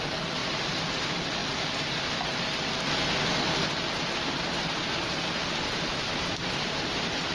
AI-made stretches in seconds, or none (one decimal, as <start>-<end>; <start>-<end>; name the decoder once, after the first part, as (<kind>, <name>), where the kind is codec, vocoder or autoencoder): none

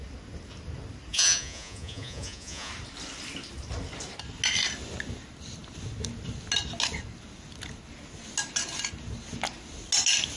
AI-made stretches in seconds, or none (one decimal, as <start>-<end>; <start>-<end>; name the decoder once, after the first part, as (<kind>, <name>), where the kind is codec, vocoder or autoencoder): 1.1-2.7 (vocoder, Vocos)

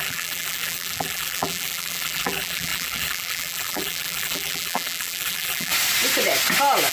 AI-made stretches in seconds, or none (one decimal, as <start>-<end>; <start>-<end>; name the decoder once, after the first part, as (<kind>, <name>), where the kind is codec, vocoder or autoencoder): 0.0-5.7 (vocoder, BigVGAN v2)

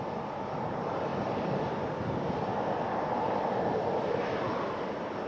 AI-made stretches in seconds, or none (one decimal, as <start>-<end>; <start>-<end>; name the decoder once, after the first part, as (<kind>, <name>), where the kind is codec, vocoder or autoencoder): 0.0-2.5 (vocoder, BigVGAN v2); 4.2-5.3

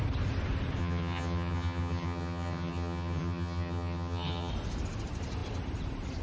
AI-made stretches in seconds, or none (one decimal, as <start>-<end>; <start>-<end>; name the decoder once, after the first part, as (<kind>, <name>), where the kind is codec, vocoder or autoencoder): 0.8-4.5 (vocoder, HiFi-GAN)

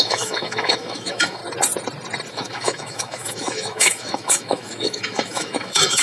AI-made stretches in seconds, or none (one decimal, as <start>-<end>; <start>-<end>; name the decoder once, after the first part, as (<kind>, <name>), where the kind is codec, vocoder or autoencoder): 0.0-1.4 (autoencoder, DAC-VAE); 2.3-6.0